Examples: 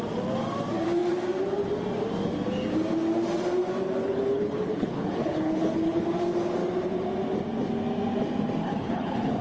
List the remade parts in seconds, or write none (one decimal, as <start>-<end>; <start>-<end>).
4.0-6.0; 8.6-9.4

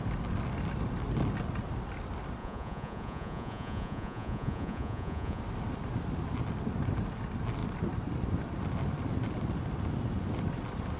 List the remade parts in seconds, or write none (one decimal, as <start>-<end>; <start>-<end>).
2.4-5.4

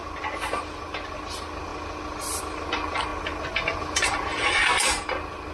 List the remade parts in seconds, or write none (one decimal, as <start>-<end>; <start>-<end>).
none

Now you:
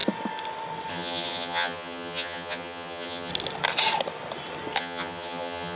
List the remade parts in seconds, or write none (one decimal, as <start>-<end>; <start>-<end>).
0.9-3.3; 4.8-5.8

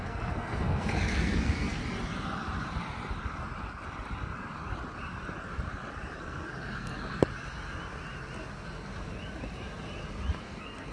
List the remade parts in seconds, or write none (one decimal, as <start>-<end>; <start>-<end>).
0.0-1.8; 6.2-6.9; 10.4-10.9